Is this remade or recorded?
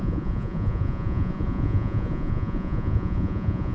remade